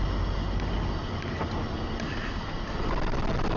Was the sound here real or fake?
real